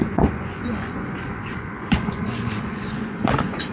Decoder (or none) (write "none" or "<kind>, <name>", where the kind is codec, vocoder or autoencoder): vocoder, Vocos